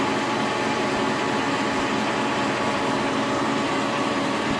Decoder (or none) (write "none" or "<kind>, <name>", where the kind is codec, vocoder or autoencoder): none